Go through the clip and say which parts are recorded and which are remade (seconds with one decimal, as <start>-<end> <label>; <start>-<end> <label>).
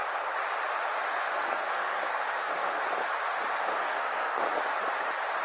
0.0-1.2 recorded; 1.2-2.8 remade; 2.8-3.8 recorded; 3.8-4.4 remade; 4.4-5.4 recorded